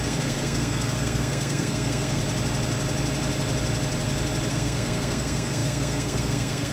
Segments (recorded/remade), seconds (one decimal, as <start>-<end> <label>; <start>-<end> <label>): 0.0-2.2 remade; 2.2-4.5 recorded; 4.5-6.7 remade